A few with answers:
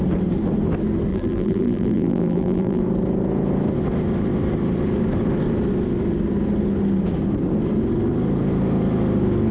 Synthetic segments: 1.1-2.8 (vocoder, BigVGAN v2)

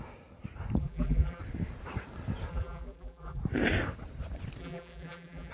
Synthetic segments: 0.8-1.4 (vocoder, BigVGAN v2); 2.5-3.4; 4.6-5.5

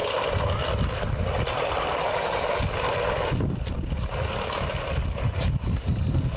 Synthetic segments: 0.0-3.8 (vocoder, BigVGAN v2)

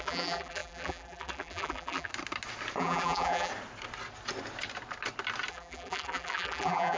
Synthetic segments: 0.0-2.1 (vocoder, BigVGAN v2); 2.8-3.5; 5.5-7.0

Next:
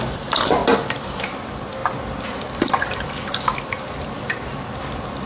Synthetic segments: 0.0-0.6 (vocoder, BigVGAN v2); 1.2-5.3

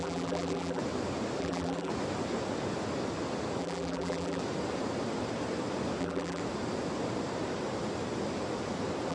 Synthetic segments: 0.0-0.8 (vocoder, BigVGAN v2); 1.4-1.9; 3.6-4.4; 6.0-6.4